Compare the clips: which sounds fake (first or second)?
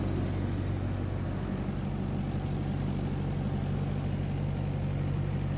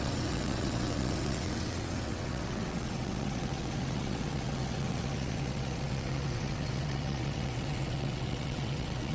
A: second